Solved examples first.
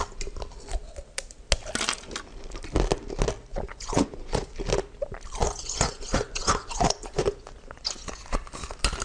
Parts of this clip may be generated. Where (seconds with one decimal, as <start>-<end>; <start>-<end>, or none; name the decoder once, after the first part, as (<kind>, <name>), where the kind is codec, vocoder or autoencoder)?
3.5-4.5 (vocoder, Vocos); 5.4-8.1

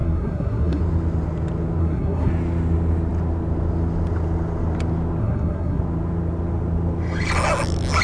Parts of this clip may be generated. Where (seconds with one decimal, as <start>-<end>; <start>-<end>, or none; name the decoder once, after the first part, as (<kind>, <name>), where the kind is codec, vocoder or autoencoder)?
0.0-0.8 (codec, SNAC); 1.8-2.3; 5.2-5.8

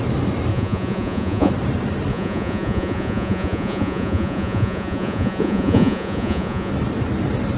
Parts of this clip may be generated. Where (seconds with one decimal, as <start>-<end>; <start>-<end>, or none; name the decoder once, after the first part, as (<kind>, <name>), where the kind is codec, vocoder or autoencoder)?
0.5-1.5 (vocoder, Vocos); 2.1-6.7

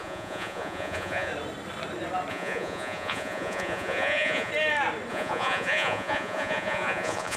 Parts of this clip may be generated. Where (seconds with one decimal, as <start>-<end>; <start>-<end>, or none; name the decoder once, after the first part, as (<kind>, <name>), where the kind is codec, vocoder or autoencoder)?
0.0-1.3 (vocoder, Vocos); 2.3-4.5; 5.1-7.4

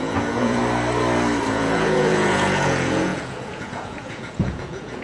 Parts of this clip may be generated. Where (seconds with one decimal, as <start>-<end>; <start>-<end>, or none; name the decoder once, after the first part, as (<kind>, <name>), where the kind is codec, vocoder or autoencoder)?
0.0-0.6 (vocoder, Vocos); 1.5-5.0

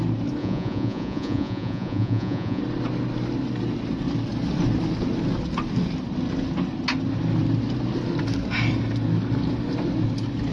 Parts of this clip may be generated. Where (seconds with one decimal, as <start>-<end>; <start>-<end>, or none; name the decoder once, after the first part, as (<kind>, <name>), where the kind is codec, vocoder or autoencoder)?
0.4-2.6 (vocoder, Vocos)

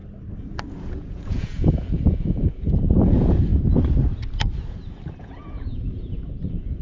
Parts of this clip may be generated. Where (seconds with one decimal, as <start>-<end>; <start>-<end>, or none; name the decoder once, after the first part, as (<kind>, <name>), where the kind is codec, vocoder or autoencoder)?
0.7-3.5 (vocoder, Vocos); 5.2-6.8